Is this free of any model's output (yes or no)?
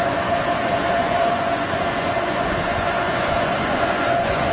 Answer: no